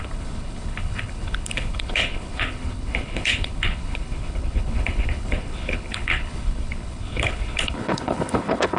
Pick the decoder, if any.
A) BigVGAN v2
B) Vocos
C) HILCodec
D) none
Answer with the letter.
C